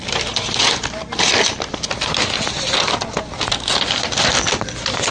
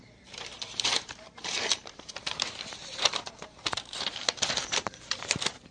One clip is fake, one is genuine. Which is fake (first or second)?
second